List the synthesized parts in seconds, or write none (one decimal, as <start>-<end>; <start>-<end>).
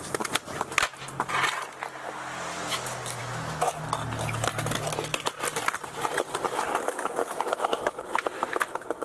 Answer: 3.2-3.7; 7.2-8.0